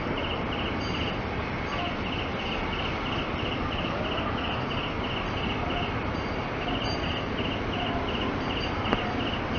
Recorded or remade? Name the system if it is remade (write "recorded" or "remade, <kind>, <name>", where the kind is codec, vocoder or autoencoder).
recorded